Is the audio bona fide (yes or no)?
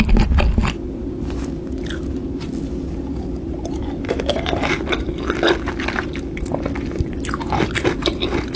yes